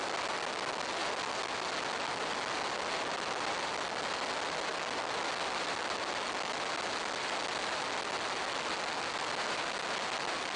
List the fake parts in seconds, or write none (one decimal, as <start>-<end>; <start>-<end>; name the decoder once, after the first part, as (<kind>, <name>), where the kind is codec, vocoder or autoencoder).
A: none